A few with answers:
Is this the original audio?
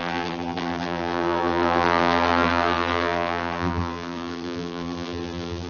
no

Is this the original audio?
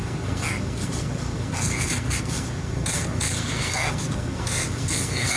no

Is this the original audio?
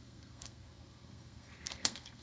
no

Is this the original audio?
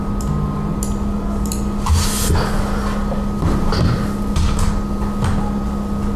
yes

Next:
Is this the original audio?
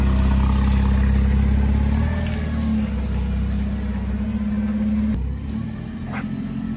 yes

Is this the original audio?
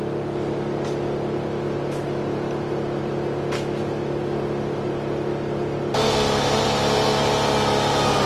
yes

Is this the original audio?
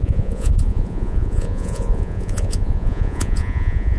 no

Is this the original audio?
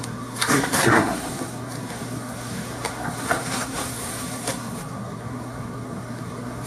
no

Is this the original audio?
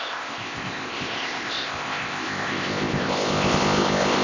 no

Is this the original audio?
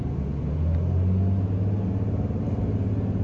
yes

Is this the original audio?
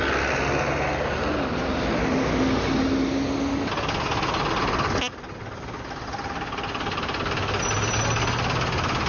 yes